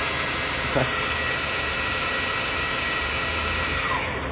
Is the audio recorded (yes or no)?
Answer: yes